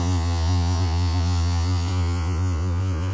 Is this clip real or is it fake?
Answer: fake